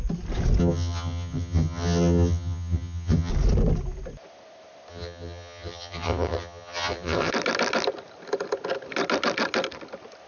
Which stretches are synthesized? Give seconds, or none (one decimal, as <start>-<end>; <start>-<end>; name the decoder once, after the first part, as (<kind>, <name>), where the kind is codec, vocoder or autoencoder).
0.6-3.3 (vocoder, HiFi-GAN); 4.9-7.3